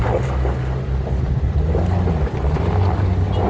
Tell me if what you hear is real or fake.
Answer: real